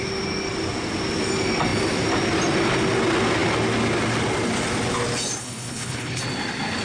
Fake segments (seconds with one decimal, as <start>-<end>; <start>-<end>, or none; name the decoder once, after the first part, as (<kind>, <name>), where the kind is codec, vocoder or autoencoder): 5.4-6.2 (codec, HILCodec)